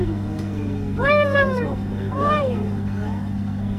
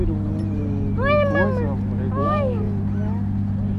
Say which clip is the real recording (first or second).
second